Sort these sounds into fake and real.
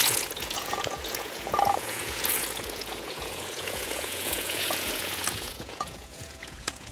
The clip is fake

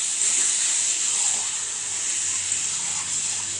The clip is real